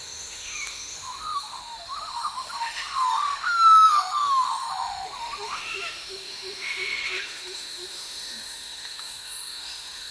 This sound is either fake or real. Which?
fake